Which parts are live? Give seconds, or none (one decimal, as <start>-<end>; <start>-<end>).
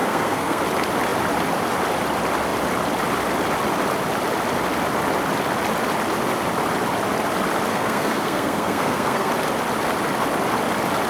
0.6-7.7; 9.3-11.1